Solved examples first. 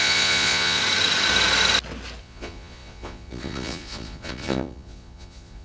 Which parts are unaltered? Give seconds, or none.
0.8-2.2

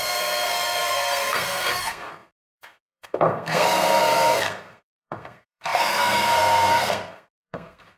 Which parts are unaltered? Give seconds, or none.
none

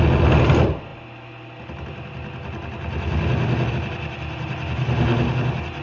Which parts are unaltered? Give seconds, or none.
0.0-5.8

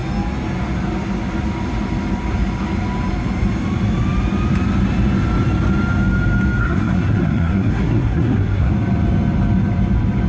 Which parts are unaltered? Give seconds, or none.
0.0-6.6; 8.7-10.3

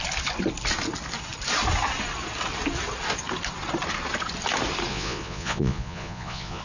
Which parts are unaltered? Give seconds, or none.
0.0-4.9

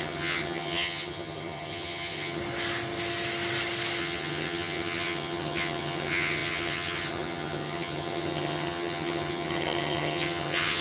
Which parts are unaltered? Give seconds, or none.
2.4-4.0